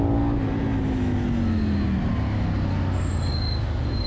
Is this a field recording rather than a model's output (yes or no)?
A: yes